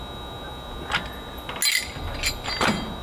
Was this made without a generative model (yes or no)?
yes